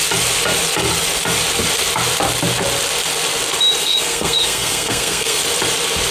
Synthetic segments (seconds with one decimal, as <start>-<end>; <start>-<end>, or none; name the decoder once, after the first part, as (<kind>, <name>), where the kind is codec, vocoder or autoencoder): 3.8-5.4 (codec, SNAC)